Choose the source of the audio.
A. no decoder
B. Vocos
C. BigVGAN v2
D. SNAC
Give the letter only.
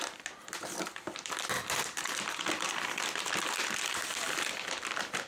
C